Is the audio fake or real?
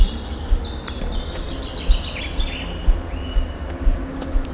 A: real